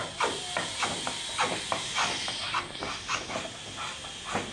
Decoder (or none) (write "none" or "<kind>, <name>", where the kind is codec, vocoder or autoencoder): none